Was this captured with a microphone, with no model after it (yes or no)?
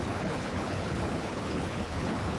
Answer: no